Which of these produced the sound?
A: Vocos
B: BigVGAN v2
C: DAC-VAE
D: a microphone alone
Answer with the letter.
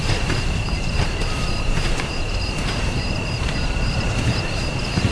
B